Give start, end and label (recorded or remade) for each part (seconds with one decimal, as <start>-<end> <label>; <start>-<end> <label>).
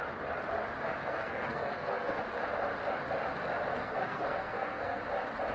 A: 0.0-1.0 recorded; 1.0-2.2 remade; 2.2-3.7 recorded; 3.7-5.0 remade; 5.0-5.5 recorded